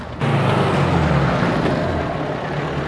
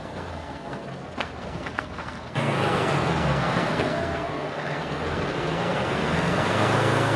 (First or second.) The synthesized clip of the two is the second